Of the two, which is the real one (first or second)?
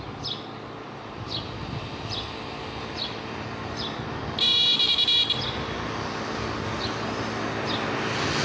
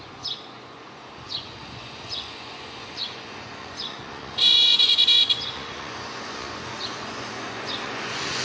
first